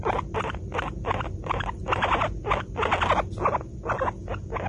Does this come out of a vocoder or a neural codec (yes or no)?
no